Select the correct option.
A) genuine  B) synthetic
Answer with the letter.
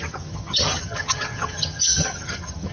B